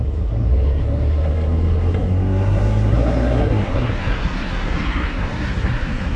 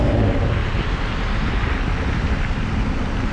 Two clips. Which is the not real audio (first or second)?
first